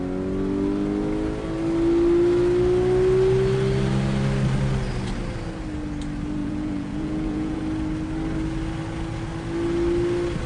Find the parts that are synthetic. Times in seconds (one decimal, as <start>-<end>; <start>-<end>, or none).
6.4-7.6